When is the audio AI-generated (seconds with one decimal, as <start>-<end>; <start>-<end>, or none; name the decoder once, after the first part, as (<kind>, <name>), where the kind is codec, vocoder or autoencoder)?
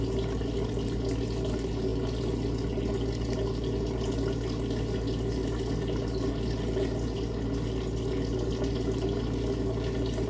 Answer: none